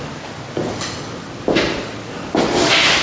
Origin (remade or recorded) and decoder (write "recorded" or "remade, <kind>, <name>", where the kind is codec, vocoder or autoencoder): recorded